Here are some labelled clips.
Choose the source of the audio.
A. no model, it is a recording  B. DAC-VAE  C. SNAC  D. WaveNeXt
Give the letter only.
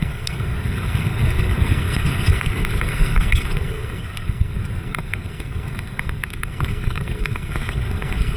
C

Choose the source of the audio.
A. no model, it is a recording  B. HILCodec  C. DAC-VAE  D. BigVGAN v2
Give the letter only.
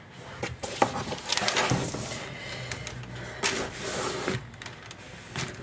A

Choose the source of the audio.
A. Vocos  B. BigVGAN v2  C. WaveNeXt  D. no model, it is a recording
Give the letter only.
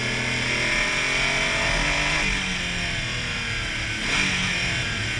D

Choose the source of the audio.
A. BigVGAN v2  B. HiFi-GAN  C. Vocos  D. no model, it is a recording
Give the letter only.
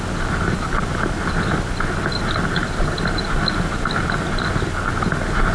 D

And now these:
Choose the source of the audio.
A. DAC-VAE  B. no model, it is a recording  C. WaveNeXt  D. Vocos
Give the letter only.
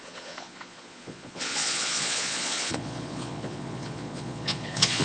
D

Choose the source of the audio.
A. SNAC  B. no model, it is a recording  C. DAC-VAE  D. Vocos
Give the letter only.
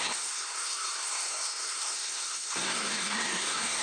A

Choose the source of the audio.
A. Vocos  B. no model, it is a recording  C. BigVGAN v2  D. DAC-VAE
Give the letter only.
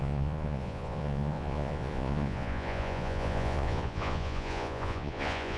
A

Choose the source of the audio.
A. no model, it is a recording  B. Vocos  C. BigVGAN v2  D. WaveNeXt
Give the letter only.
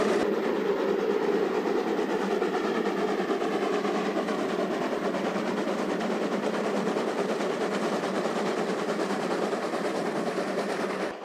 C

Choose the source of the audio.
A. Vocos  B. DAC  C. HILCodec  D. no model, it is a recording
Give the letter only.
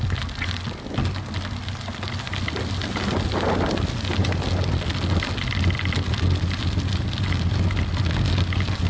D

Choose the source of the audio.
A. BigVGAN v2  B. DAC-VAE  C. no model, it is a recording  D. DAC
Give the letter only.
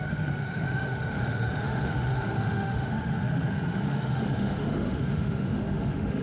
B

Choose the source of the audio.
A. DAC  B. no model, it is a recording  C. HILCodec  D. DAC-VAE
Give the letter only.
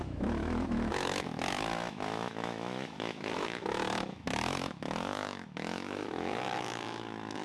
D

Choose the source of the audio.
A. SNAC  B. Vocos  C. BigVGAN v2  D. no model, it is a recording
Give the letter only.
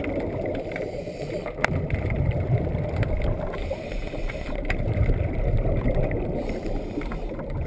C